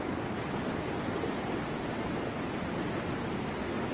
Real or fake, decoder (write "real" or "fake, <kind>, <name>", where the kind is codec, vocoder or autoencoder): real